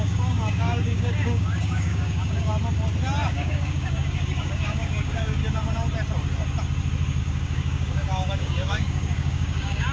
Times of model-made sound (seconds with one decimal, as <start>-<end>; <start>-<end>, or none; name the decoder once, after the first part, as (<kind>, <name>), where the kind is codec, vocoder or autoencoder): 0.0-2.5 (codec, DAC); 3.3-5.4; 7.2-9.9